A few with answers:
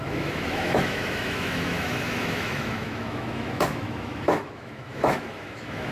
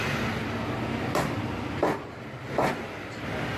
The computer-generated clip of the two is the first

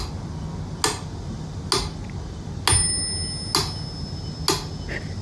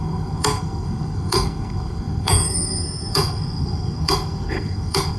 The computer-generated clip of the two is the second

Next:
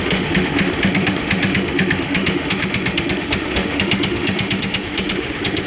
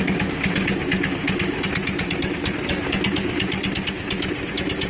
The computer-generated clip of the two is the first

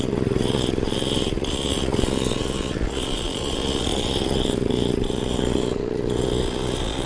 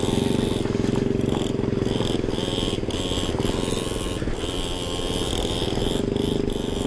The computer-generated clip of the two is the first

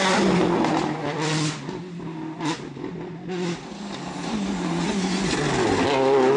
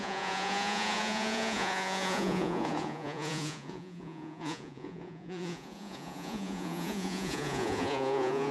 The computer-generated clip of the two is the second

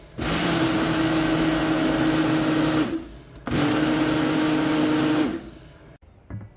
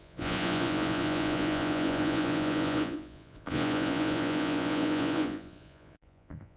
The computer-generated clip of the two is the second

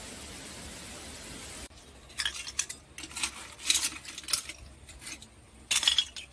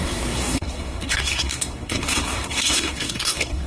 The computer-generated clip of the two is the second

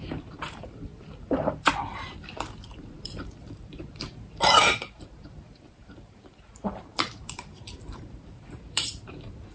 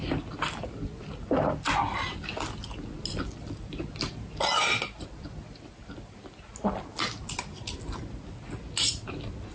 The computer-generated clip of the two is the first